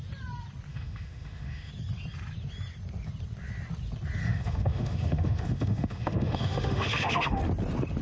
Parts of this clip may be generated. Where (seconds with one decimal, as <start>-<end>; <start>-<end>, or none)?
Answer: 0.7-1.7; 4.2-7.4